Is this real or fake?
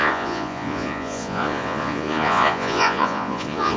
fake